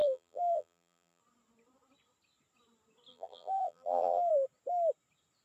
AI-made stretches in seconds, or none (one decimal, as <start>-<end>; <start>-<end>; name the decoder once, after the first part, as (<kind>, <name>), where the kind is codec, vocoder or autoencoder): 0.0-1.2 (vocoder, BigVGAN v2); 3.1-4.3